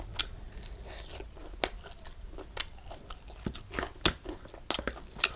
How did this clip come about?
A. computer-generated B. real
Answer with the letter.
B